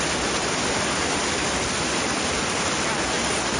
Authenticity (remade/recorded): recorded